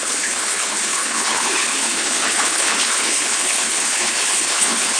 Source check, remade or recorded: remade